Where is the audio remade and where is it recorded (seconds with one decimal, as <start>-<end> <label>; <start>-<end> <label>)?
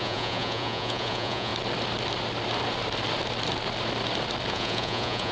0.0-1.5 remade; 1.5-4.5 recorded; 4.5-5.3 remade